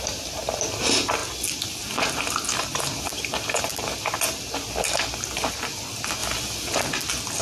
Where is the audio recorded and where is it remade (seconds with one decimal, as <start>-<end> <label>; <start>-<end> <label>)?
0.0-6.2 recorded; 6.2-6.8 remade; 6.8-7.4 recorded